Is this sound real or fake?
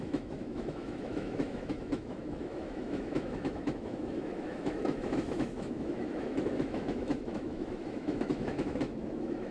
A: fake